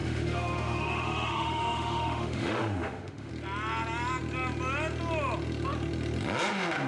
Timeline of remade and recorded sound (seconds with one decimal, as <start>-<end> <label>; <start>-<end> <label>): 0.0-3.3 remade; 3.3-6.9 recorded